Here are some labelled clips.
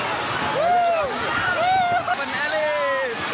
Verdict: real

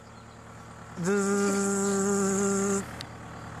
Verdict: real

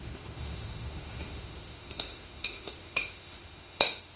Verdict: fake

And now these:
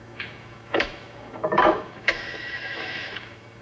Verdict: fake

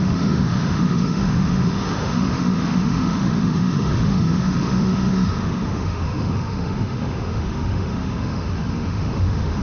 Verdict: fake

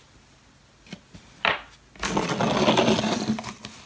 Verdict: real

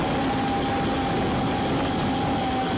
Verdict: real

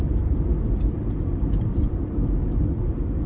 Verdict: real